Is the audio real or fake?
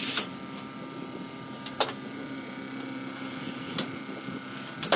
real